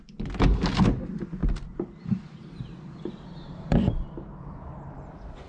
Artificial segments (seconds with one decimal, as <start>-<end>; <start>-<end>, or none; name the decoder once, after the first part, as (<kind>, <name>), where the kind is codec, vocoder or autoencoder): 1.4-4.7 (vocoder, BigVGAN v2)